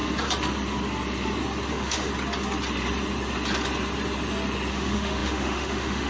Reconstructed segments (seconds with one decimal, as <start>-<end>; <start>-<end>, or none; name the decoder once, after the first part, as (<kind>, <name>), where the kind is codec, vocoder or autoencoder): 1.7-2.1 (autoencoder, DAC-VAE); 4.7-6.1